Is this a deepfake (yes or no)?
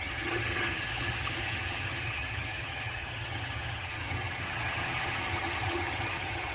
yes